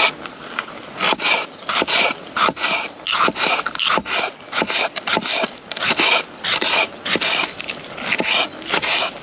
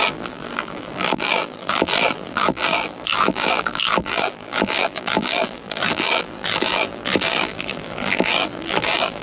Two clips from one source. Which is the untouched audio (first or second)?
first